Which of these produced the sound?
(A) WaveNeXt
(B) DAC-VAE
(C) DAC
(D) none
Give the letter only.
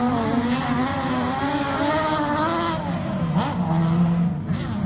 D